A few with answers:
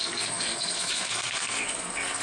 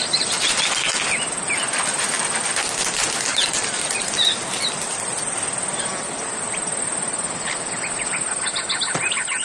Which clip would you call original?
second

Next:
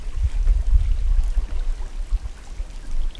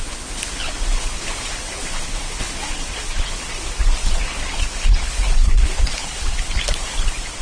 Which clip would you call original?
first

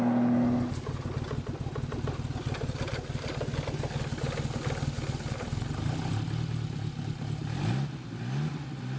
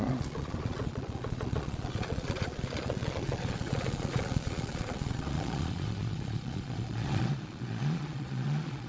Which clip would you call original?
first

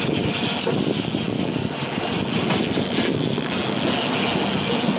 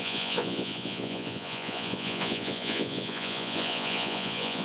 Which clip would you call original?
first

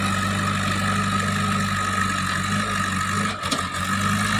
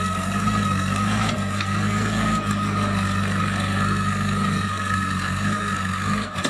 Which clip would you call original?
first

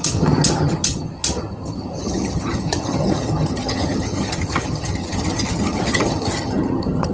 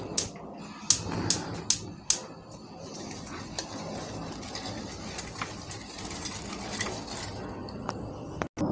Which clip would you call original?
second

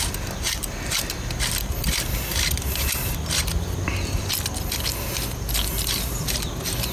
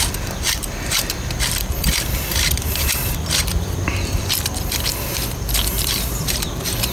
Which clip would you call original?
first